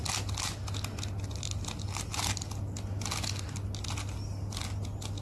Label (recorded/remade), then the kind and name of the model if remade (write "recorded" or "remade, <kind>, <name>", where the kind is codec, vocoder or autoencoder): recorded